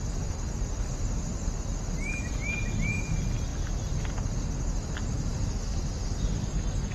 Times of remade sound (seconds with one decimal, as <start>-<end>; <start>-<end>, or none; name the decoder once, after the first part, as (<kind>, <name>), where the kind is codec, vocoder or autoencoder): none